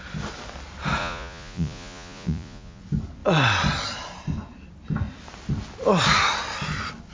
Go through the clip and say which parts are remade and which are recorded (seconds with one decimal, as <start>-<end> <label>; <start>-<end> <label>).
0.0-1.0 recorded; 1.0-2.8 remade; 2.8-7.1 recorded